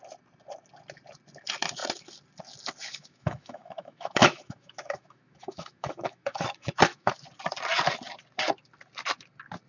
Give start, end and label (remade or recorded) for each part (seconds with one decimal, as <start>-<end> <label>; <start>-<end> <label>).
0.0-2.8 recorded; 2.8-7.2 remade; 7.2-9.7 recorded